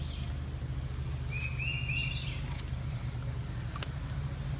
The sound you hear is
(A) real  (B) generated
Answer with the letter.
A